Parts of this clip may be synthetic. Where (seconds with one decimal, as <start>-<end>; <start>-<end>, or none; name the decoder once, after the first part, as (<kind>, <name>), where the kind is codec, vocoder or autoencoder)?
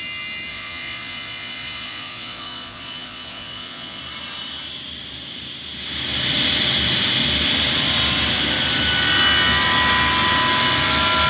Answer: 0.5-4.0 (vocoder, Vocos)